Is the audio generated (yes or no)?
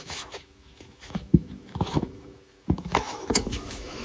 yes